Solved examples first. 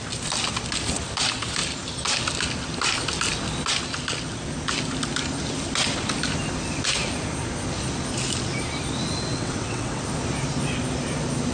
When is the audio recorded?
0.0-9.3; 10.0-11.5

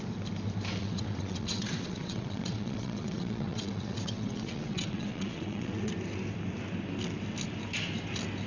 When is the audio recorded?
0.0-0.8; 5.9-8.5

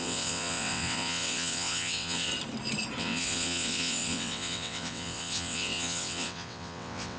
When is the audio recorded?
2.3-3.0

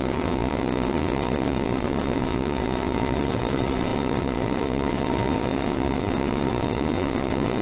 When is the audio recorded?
none

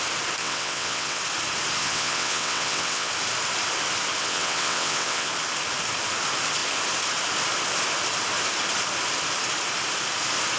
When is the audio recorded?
0.0-0.4; 1.2-1.8; 3.1-4.2; 5.3-10.6

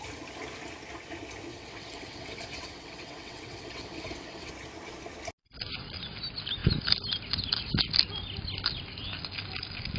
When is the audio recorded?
0.0-1.5; 4.5-10.0

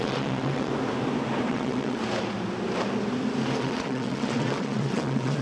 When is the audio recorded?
0.7-1.5; 2.0-3.6

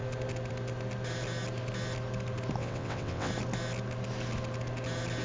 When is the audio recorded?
0.0-2.6; 3.3-5.2